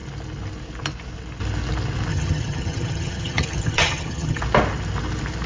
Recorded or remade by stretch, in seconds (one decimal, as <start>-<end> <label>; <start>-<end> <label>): 0.0-2.1 recorded; 2.1-4.4 remade; 4.4-5.5 recorded